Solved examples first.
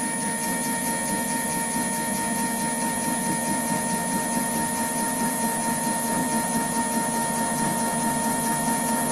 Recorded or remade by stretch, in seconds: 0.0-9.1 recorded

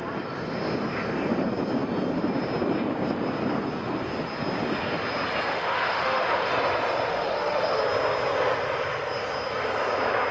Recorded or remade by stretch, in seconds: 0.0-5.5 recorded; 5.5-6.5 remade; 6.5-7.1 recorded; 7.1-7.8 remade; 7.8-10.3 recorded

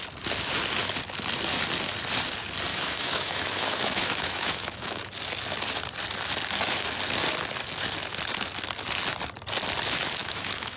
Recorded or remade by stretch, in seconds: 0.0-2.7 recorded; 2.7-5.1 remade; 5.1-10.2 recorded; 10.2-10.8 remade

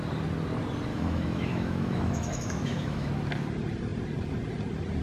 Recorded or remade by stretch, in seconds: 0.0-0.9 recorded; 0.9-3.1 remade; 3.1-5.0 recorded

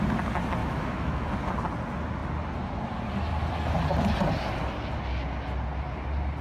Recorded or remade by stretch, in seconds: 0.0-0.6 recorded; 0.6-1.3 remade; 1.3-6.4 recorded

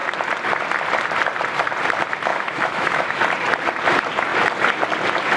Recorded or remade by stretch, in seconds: 0.0-2.3 recorded; 2.3-3.2 remade; 3.2-5.4 recorded